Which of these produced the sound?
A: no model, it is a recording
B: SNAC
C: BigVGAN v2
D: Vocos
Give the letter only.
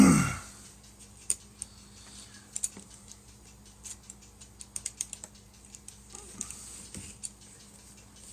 C